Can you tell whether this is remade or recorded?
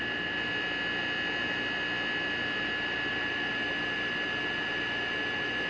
recorded